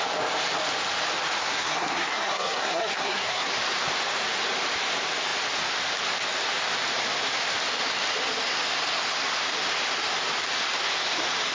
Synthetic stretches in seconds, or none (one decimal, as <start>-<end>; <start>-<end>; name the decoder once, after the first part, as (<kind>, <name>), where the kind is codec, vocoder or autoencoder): 1.4-3.5 (codec, SNAC)